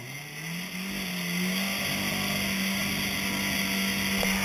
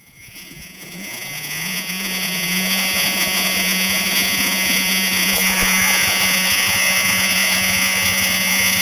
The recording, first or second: first